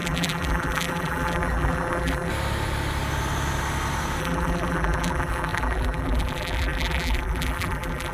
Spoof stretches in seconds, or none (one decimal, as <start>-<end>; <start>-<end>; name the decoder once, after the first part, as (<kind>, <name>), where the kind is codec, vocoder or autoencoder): 0.0-2.3 (vocoder, BigVGAN v2); 4.2-8.1

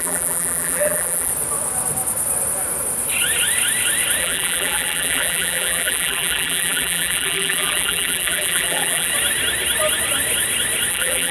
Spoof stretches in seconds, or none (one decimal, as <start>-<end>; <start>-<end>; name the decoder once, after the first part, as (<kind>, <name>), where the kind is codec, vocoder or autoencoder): 0.0-1.3 (vocoder, BigVGAN v2); 4.2-9.1; 10.9-11.3